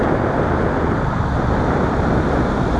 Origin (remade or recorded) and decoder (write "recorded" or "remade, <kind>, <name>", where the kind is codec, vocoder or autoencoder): recorded